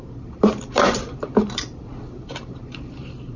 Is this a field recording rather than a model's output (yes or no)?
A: no